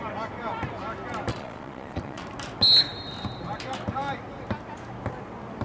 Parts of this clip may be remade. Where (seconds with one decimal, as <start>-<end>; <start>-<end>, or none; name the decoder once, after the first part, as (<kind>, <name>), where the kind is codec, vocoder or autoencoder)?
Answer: 1.3-2.2 (vocoder, Vocos)